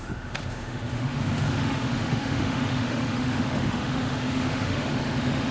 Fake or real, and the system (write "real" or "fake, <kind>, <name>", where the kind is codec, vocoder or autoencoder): fake, autoencoder, DAC-VAE